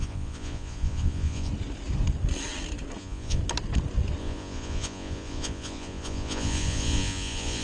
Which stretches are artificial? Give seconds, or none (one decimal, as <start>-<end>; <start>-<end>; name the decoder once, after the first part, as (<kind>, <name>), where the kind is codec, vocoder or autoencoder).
0.0-1.5 (vocoder, Vocos); 3.0-3.4; 4.2-7.6